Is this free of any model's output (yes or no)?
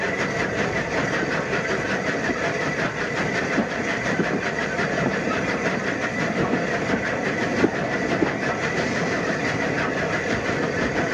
yes